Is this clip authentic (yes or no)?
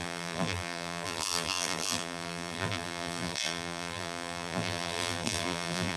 no